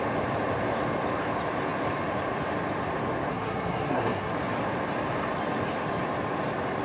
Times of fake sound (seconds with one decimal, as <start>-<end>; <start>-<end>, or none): 3.3-4.3